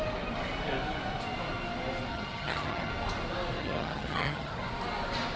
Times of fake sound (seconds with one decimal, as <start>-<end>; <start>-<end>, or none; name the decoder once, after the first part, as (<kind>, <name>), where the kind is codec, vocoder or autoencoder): 2.1-2.9 (vocoder, HiFi-GAN); 3.6-4.6